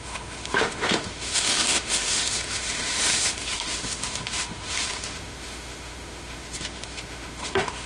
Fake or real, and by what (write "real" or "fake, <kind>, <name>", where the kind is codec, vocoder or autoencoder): fake, autoencoder, DAC-VAE